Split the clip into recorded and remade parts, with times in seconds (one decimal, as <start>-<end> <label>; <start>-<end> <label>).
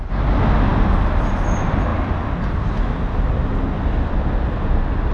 0.0-5.1 recorded